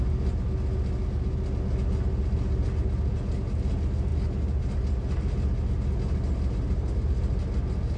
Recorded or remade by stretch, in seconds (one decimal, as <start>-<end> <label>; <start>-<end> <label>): 0.0-8.0 recorded